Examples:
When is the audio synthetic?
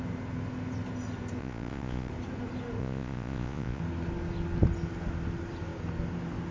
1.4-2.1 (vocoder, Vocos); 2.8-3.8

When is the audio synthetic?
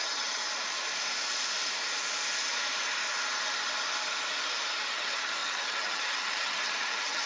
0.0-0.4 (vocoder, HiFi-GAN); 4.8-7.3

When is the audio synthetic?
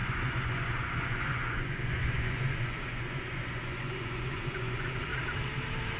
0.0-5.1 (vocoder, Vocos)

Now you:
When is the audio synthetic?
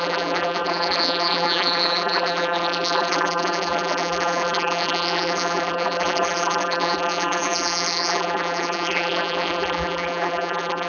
0.0-10.9 (vocoder, BigVGAN v2)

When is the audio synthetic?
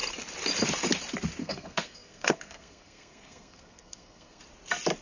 1.4-4.4 (codec, SNAC)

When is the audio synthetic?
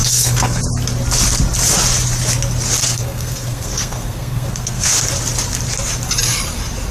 0.0-0.6 (codec, SNAC); 2.8-5.0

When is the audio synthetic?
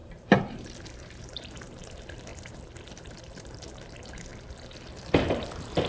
0.0-4.3 (vocoder, BigVGAN v2); 5.0-5.9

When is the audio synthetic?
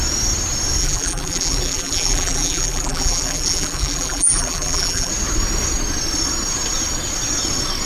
0.8-5.1 (vocoder, BigVGAN v2)